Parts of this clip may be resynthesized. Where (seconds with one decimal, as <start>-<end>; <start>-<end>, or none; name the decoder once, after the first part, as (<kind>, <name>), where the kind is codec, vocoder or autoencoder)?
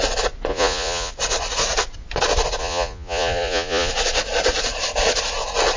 0.5-1.1 (vocoder, Vocos); 2.6-3.9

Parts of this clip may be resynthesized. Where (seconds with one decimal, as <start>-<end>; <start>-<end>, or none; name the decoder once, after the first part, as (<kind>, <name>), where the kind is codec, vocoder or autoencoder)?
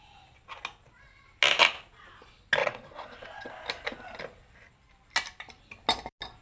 2.6-3.5 (vocoder, WaveNeXt)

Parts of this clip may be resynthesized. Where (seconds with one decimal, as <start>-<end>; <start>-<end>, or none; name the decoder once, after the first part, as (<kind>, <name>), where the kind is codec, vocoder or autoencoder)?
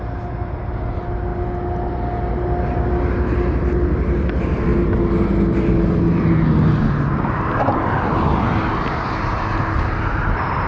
none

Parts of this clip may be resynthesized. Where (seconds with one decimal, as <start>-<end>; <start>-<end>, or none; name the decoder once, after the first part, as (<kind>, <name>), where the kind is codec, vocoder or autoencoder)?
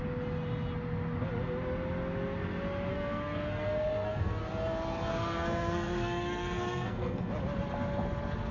2.9-4.4 (codec, SNAC); 5.1-7.3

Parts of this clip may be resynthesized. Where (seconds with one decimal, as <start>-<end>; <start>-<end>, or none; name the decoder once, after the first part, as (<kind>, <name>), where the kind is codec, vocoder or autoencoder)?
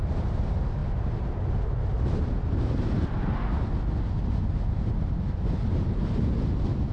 none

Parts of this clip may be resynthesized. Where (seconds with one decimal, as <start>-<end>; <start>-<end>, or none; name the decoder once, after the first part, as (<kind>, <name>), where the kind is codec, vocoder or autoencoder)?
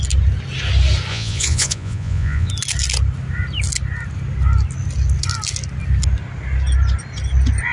1.1-2.5 (vocoder, Vocos)